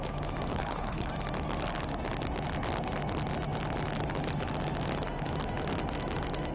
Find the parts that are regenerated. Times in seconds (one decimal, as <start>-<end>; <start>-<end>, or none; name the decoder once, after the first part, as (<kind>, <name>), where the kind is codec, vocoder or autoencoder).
0.5-1.1 (codec, HILCodec)